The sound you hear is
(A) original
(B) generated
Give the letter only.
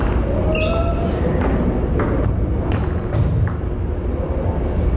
A